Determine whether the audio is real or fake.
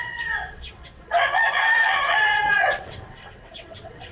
fake